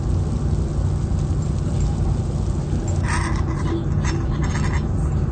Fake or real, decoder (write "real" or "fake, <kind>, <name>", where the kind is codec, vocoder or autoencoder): real